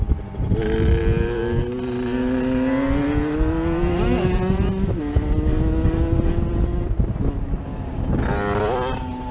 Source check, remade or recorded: recorded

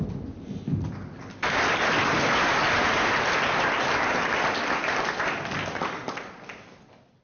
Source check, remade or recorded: recorded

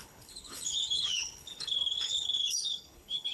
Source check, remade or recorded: remade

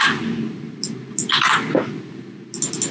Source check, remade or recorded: recorded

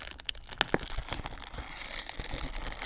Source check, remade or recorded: recorded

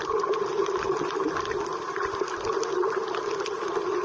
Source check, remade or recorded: recorded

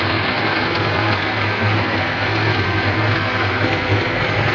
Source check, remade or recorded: remade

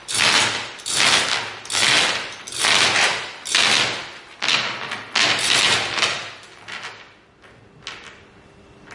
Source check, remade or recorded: recorded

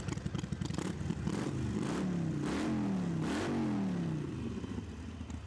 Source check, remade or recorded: recorded